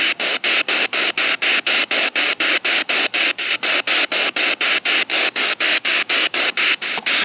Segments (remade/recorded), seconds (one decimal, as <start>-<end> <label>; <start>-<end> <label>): 0.0-5.1 recorded; 5.1-6.4 remade; 6.4-7.2 recorded

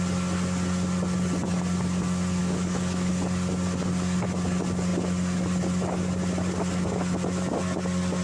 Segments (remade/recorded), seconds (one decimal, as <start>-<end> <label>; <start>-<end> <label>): 0.0-2.4 recorded; 2.4-3.1 remade; 3.1-8.2 recorded

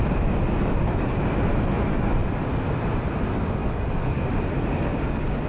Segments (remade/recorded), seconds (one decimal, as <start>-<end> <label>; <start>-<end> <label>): 0.0-3.6 recorded; 3.6-4.3 remade; 4.3-5.5 recorded

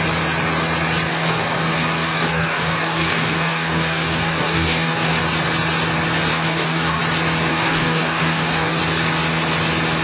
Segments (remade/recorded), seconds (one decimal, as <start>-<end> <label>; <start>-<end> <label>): 0.0-1.1 recorded; 1.1-5.2 remade; 5.2-6.3 recorded; 6.3-7.0 remade; 7.0-7.5 recorded; 7.5-8.8 remade; 8.8-10.0 recorded

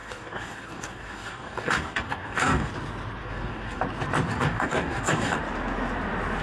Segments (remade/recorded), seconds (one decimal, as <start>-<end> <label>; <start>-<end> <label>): 0.0-2.7 remade; 2.7-3.2 recorded; 3.2-3.8 remade; 3.8-4.3 recorded; 4.3-5.4 remade; 5.4-6.4 recorded

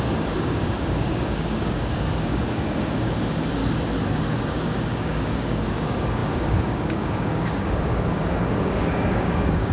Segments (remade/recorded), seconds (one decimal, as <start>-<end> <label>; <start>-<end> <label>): 0.0-3.6 remade; 3.6-4.5 recorded; 4.5-9.7 remade

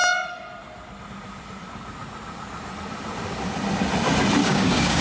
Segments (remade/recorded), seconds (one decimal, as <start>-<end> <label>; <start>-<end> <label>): 0.0-4.4 recorded; 4.4-5.0 remade